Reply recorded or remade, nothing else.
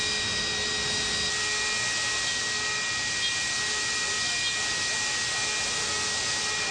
recorded